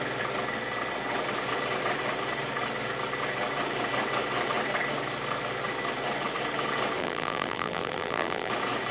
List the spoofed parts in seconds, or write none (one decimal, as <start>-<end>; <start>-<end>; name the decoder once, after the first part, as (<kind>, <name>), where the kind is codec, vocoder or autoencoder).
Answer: 7.0-8.5 (vocoder, BigVGAN v2)